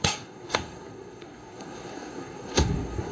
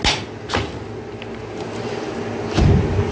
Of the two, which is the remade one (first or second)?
first